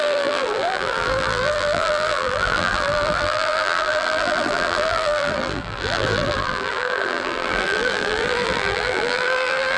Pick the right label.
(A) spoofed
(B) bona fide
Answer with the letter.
A